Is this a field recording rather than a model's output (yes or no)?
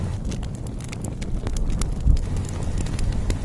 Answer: yes